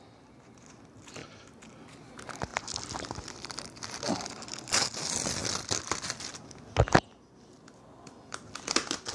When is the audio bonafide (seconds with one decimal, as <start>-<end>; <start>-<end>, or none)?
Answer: 0.0-2.5; 4.0-9.1